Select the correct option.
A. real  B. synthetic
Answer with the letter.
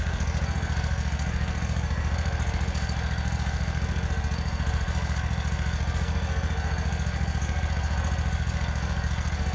B